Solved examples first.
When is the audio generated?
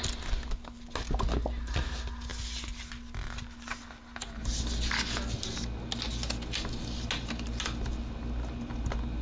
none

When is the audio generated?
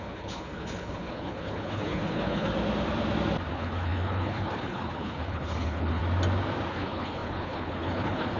0.0-2.5 (codec, HILCodec); 3.5-6.0; 6.7-8.4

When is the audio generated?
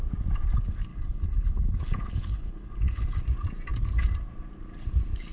0.9-3.2 (codec, HILCodec)